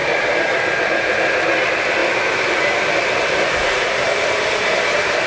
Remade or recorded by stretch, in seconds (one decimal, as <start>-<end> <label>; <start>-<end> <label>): 0.0-5.3 recorded